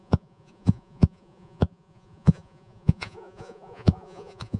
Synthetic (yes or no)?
yes